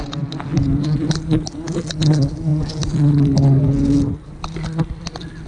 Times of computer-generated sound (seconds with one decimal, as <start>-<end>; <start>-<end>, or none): 0.5-1.1; 2.5-3.6